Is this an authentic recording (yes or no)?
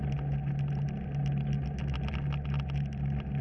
yes